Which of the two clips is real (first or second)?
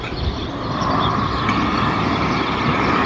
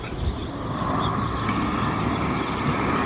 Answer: second